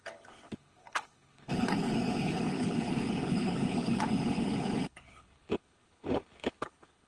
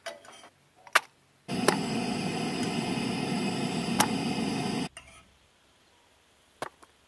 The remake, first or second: first